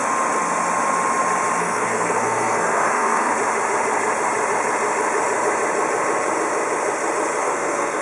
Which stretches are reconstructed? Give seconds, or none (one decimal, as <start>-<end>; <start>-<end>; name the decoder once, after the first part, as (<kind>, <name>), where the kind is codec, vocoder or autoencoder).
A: 1.6-3.3 (codec, SNAC); 7.4-8.0